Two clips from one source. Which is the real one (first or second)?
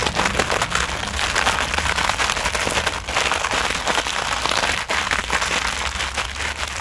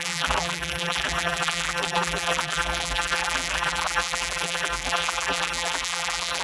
first